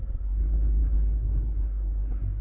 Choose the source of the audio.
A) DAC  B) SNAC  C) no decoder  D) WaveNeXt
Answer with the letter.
B